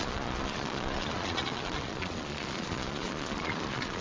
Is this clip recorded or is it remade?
remade